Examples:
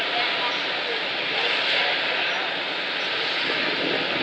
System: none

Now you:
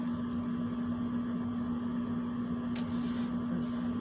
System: none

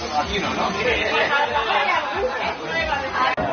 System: none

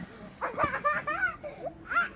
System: none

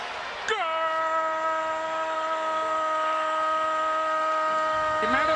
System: none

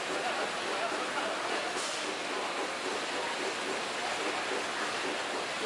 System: none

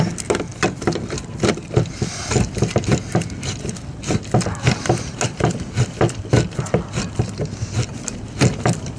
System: none